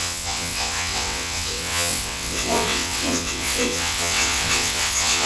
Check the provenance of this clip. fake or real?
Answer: fake